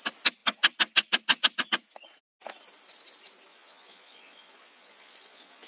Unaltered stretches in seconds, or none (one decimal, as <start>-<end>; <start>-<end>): 0.0-3.5